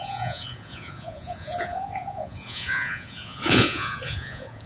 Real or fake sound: fake